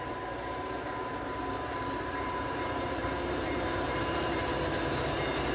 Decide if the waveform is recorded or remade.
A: remade